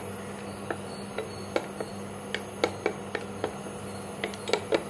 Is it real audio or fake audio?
real